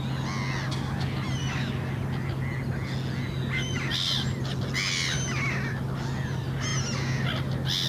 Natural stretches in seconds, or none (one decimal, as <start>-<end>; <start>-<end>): 0.0-7.9